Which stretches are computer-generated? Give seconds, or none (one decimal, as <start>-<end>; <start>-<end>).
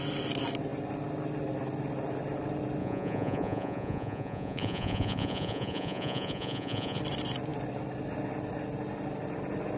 2.8-7.0